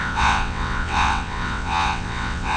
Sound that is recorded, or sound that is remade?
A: remade